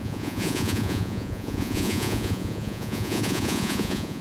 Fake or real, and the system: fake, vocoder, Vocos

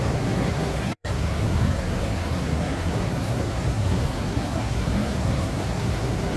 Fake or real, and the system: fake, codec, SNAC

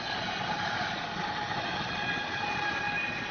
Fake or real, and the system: real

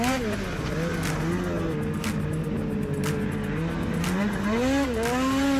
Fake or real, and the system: real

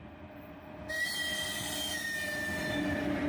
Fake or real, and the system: real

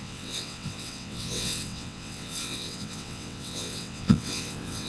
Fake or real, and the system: fake, vocoder, WaveNeXt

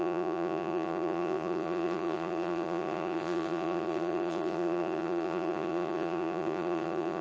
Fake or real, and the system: fake, vocoder, Vocos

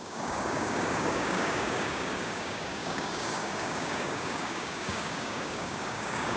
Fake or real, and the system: fake, codec, DAC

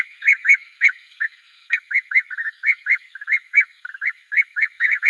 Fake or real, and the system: fake, codec, SNAC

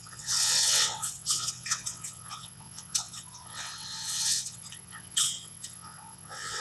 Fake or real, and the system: fake, vocoder, WaveNeXt